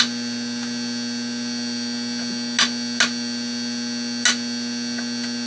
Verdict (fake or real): real